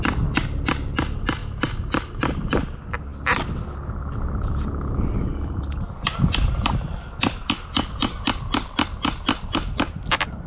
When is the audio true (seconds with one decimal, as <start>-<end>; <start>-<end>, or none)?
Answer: 0.0-10.5